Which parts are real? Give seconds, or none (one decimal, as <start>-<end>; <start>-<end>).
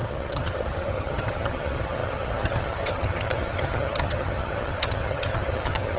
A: none